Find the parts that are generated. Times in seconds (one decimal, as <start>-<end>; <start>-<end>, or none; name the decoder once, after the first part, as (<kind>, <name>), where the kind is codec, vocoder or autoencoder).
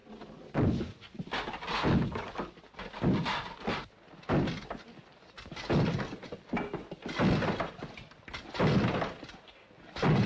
none